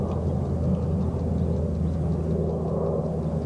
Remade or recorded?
recorded